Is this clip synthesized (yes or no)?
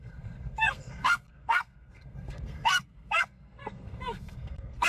yes